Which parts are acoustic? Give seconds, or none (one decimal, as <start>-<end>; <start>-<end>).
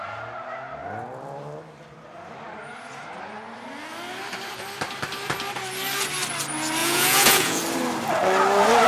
0.0-6.8; 7.6-8.9